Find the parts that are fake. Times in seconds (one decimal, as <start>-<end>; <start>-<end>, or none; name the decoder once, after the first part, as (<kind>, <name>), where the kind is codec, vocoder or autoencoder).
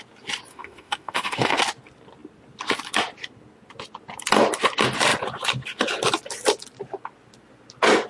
0.5-1.6 (autoencoder, DAC-VAE)